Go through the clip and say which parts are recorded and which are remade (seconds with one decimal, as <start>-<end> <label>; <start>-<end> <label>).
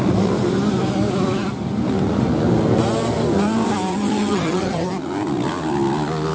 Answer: 0.0-3.9 recorded; 3.9-4.9 remade; 4.9-6.3 recorded